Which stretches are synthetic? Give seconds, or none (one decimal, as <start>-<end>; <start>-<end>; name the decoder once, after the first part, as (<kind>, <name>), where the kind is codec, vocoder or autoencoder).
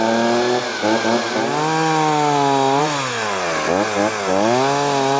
none